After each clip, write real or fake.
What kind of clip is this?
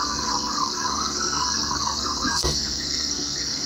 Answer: fake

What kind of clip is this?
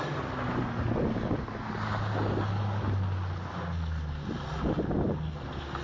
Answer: real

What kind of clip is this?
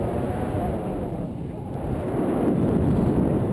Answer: real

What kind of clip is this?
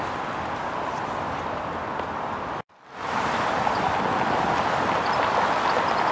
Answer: real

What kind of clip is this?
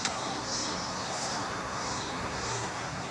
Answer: fake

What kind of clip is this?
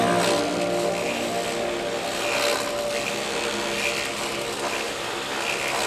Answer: real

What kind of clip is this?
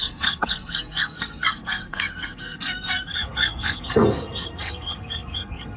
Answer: fake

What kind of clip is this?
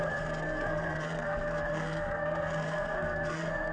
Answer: fake